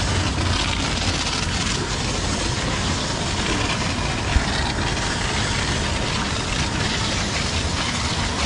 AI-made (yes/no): no